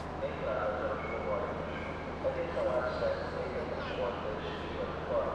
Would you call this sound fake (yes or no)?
no